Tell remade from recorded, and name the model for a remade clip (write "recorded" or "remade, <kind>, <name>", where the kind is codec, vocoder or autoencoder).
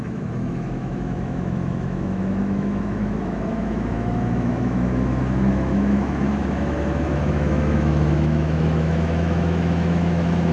remade, autoencoder, DAC-VAE